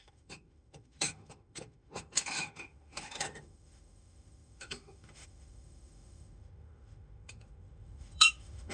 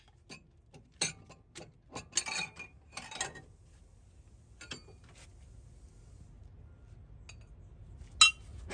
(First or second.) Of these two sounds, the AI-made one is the first